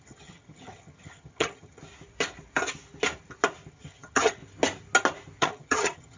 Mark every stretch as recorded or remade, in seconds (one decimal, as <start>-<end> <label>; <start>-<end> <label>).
0.0-1.8 remade; 1.8-3.7 recorded; 3.7-4.4 remade; 4.4-5.4 recorded; 5.4-6.2 remade

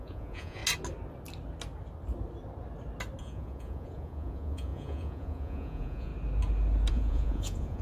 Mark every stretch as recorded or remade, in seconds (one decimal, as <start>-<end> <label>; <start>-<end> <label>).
0.0-0.6 remade; 0.6-3.2 recorded; 3.2-6.1 remade; 6.1-6.9 recorded; 6.9-7.8 remade

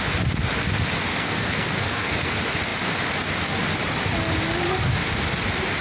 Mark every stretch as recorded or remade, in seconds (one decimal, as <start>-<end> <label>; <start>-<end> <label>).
0.0-1.1 recorded; 1.1-2.3 remade; 2.3-5.8 recorded